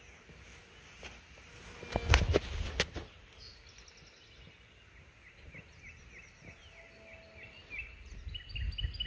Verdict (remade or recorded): recorded